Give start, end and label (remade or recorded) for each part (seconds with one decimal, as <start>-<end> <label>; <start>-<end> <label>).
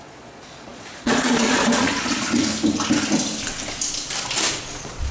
0.0-2.5 remade; 2.5-4.5 recorded; 4.5-5.1 remade